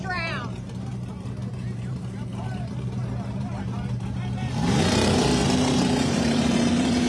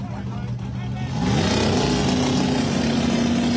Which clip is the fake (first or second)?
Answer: first